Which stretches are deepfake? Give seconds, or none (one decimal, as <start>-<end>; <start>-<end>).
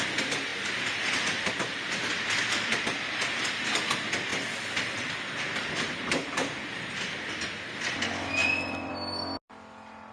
none